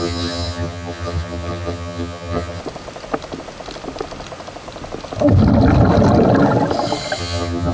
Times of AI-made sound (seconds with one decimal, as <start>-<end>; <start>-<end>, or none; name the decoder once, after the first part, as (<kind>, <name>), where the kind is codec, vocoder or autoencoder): 0.0-2.6 (vocoder, HiFi-GAN); 7.2-7.7

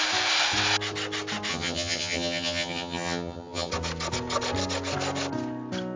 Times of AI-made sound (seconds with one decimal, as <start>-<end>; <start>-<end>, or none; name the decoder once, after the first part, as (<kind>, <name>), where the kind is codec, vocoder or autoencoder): 1.5-3.7 (vocoder, HiFi-GAN)

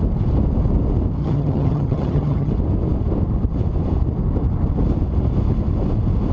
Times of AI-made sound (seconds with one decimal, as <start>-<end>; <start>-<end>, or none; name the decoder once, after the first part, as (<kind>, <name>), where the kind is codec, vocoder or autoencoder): 1.2-2.5 (vocoder, HiFi-GAN)

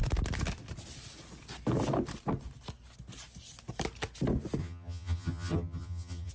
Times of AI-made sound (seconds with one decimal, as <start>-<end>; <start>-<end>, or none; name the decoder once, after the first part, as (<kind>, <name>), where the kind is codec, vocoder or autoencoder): 4.6-6.3 (vocoder, HiFi-GAN)

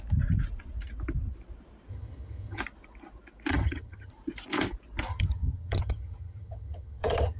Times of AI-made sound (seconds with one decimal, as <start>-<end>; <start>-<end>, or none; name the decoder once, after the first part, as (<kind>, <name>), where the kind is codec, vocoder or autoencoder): 1.9-2.6 (vocoder, HiFi-GAN); 3.5-4.1; 5.1-7.4

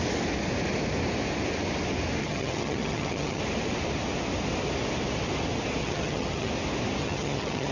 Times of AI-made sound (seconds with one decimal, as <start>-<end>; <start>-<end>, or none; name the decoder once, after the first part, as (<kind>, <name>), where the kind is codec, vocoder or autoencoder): 2.2-3.4 (vocoder, HiFi-GAN); 5.8-6.5; 7.0-7.7

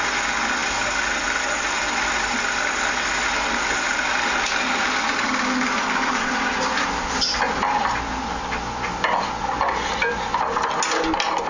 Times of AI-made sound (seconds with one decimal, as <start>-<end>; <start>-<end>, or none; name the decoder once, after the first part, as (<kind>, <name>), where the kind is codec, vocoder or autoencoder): none